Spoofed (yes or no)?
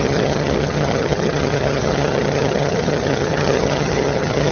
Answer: yes